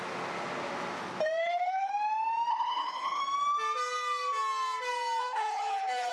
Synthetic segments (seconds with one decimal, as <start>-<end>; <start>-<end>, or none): 1.4-1.9; 2.5-3.2; 5.2-6.1